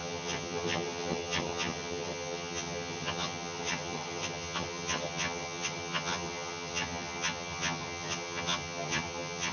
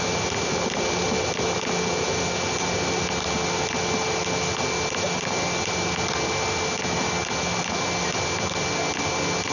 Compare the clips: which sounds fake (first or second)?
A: first